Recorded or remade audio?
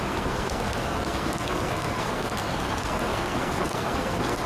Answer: remade